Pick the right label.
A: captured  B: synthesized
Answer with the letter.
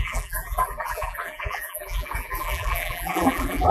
B